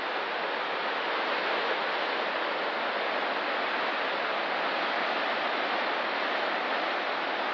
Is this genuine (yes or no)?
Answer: yes